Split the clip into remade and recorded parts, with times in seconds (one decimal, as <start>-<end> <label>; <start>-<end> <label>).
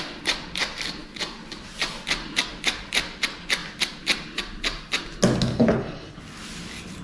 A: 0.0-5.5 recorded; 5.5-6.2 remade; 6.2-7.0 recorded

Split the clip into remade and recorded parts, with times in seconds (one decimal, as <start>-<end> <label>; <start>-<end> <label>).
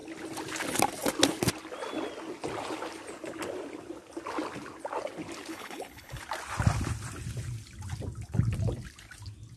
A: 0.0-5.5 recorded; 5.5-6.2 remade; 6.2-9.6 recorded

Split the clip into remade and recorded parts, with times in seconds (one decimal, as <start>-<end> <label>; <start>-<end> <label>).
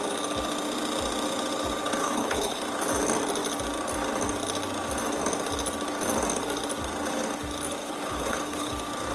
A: 0.0-2.0 recorded; 2.0-2.6 remade; 2.6-7.8 recorded; 7.8-8.7 remade; 8.7-9.1 recorded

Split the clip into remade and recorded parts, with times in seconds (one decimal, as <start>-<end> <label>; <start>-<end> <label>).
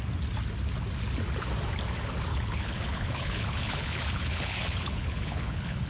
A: 0.0-2.3 recorded; 2.3-5.9 remade